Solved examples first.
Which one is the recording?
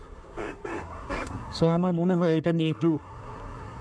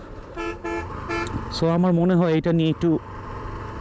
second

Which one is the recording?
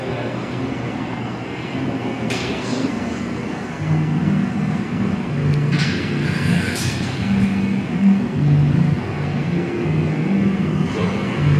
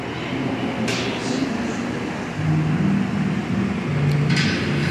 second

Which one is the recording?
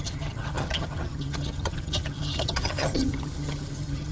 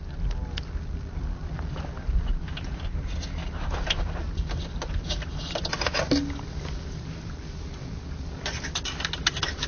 second